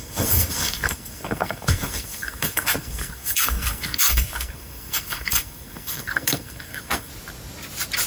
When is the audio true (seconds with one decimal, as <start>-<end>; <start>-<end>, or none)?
7.1-8.1